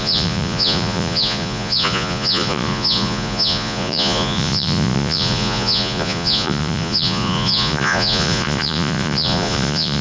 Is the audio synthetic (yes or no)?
yes